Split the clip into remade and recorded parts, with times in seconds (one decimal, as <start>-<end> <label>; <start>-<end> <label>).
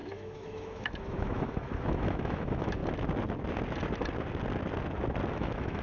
0.0-2.8 remade; 2.8-5.3 recorded; 5.3-5.8 remade